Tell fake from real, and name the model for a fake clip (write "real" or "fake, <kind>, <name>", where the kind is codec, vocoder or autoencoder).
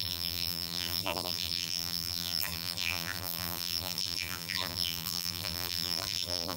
fake, vocoder, BigVGAN v2